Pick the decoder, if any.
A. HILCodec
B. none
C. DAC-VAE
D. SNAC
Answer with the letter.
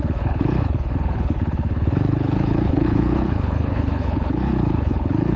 A